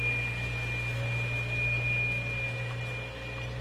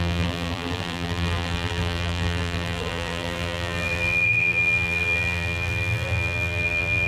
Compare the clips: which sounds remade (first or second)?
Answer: second